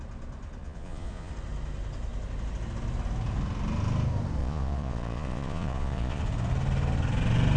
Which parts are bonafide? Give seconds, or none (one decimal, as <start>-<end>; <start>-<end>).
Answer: 0.0-0.6; 1.3-4.4; 6.2-7.6